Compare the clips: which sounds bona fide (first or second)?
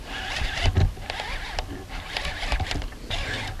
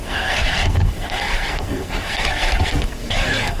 first